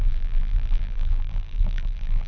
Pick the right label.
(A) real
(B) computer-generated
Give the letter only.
B